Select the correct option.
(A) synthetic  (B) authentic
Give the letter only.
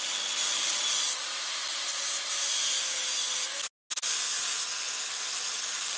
B